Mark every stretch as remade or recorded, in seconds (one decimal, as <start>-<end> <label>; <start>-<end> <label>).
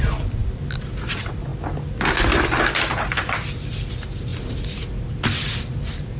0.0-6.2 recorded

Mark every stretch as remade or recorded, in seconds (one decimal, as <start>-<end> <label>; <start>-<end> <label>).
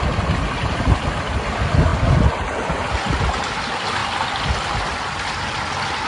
0.0-6.1 recorded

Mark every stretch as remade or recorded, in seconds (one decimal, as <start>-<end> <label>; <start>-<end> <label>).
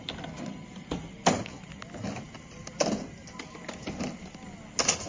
0.0-5.1 recorded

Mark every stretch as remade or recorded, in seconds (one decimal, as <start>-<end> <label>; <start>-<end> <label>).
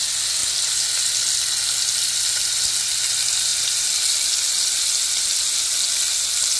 0.0-6.6 recorded